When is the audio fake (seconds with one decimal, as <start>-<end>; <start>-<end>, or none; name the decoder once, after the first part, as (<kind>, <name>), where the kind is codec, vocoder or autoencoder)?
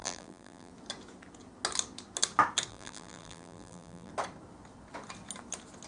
0.0-0.7 (vocoder, BigVGAN v2); 2.7-4.1